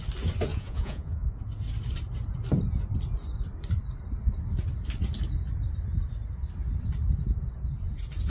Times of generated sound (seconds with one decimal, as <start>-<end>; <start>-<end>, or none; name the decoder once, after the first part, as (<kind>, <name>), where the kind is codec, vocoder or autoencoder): 0.5-1.4 (vocoder, Vocos)